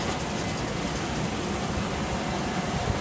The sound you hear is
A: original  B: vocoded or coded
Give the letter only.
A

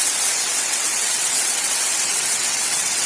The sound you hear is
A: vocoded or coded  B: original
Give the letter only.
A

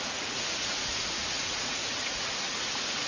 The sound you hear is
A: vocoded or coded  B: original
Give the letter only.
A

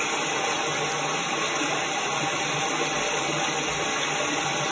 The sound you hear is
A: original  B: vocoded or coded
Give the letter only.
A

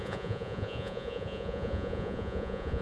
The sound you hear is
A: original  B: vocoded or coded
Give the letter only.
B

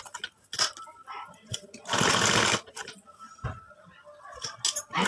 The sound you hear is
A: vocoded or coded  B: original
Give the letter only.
B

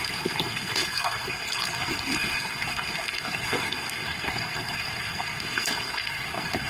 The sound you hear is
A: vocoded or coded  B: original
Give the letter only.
A